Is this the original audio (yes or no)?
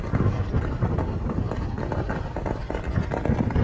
yes